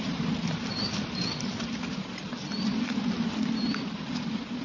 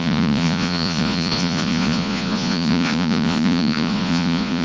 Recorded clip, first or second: first